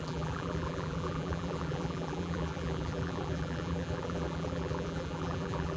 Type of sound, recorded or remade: remade